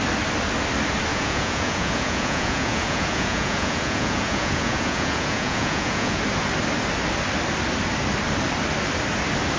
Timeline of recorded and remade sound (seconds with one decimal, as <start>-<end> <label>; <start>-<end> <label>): 0.0-1.1 recorded; 1.1-6.2 remade; 6.2-9.6 recorded